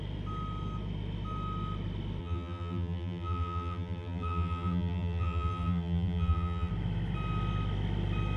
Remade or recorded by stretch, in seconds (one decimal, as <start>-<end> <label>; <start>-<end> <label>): 0.0-2.2 recorded; 2.2-6.7 remade; 6.7-8.4 recorded